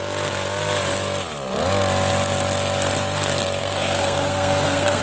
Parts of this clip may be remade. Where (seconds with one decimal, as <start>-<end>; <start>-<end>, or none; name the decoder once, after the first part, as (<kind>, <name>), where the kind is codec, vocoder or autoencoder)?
3.6-5.0 (codec, SNAC)